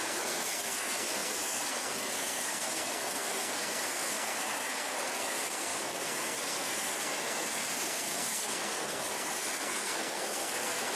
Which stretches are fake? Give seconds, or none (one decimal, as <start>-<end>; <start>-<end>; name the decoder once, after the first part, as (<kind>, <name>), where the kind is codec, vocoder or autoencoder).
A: 0.0-11.0 (codec, SNAC)